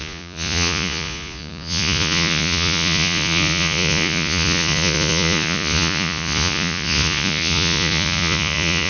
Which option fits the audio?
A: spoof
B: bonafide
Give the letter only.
A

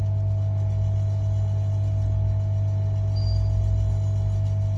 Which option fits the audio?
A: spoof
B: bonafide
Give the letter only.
B